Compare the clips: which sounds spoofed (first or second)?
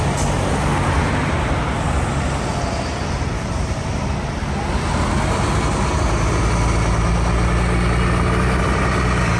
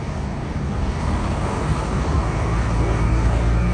second